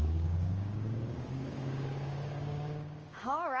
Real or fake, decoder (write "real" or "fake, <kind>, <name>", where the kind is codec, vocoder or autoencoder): fake, codec, DAC